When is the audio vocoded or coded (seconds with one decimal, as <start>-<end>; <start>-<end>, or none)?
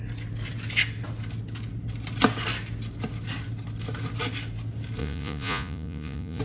5.0-6.4